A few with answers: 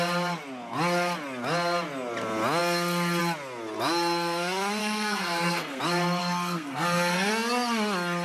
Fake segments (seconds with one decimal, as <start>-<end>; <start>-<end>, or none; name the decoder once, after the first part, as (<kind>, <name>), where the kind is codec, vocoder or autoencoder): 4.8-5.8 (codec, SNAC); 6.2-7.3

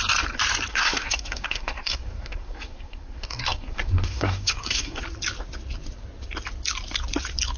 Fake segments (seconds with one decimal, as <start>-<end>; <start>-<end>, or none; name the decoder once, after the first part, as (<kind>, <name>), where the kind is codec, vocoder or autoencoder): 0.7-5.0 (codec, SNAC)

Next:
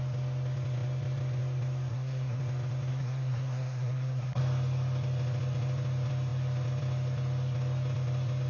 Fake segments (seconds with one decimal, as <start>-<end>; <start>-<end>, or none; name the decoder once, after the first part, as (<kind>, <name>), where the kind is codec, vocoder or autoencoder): 1.9-2.4 (codec, SNAC); 2.9-4.4

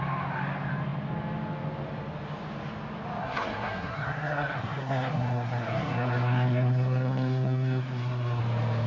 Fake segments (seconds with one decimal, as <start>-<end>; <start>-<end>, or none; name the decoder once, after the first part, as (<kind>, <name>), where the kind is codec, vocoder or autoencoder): 3.2-8.4 (codec, SNAC)

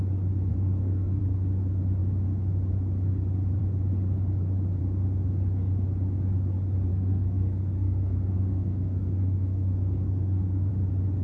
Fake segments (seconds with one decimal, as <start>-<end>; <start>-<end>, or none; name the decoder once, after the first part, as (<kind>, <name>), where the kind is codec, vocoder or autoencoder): 0.5-1.2 (codec, SNAC); 6.9-10.7